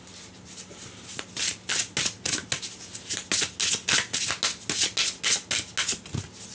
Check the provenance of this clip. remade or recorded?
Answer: recorded